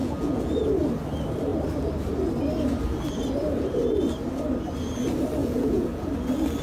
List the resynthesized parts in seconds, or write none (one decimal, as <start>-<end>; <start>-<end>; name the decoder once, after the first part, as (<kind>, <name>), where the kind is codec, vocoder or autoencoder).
0.0-0.5 (vocoder, Vocos); 5.4-6.1